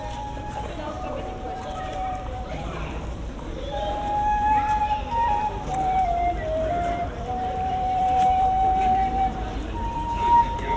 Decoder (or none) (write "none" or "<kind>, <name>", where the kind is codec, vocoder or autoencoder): vocoder, BigVGAN v2